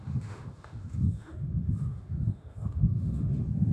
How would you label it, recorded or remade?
remade